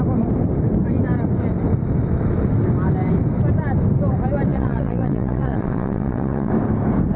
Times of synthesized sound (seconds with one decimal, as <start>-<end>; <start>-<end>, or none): 4.5-6.5